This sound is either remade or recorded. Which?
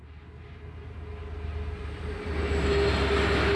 recorded